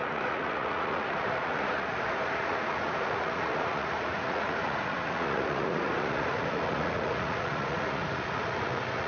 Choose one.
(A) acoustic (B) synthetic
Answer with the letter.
B